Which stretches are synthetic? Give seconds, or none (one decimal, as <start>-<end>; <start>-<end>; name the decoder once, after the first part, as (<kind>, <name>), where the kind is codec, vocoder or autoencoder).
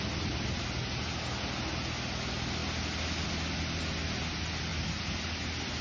none